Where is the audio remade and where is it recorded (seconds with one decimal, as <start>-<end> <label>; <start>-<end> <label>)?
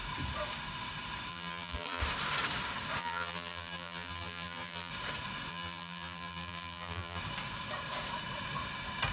0.0-1.3 recorded; 1.3-2.0 remade; 2.0-3.0 recorded; 3.0-4.9 remade; 4.9-5.5 recorded; 5.5-7.2 remade; 7.2-9.1 recorded